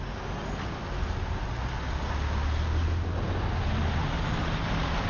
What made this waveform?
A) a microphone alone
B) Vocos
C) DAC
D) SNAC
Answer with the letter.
A